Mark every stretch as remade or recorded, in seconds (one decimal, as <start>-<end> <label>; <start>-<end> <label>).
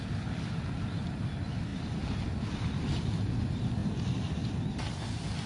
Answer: 0.0-5.5 recorded